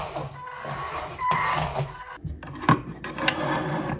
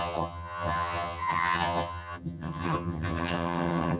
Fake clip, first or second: second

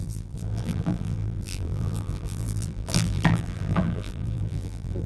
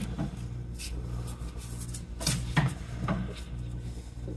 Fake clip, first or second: first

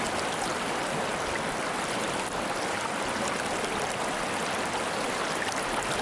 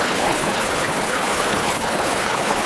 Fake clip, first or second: second